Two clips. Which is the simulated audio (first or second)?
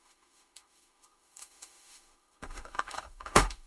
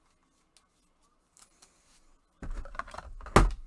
first